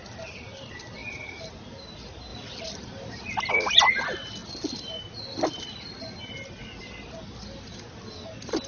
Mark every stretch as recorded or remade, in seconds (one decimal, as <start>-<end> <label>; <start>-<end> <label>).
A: 0.0-1.0 recorded; 1.0-1.5 remade; 1.5-8.7 recorded